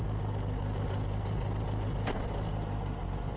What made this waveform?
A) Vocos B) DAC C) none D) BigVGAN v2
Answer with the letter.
C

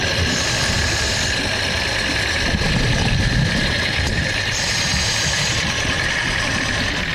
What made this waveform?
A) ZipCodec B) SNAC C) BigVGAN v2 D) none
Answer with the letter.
C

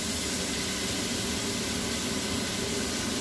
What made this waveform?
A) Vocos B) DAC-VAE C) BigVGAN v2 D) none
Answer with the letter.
D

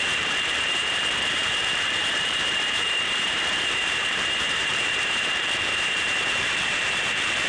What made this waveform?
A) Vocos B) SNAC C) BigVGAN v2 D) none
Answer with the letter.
C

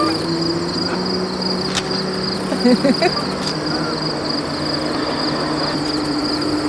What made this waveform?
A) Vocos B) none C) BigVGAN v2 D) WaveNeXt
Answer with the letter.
B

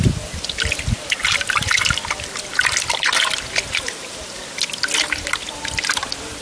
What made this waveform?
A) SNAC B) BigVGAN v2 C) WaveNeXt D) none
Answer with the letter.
D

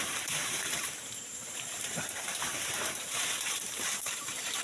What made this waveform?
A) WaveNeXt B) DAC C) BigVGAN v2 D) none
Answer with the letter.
C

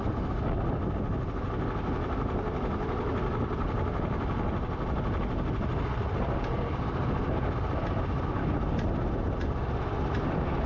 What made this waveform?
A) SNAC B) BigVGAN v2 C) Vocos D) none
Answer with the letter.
D